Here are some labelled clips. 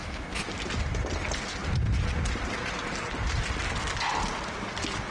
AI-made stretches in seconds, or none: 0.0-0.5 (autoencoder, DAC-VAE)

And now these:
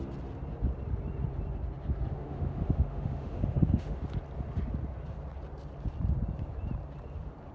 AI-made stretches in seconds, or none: 2.1-4.0 (autoencoder, DAC-VAE)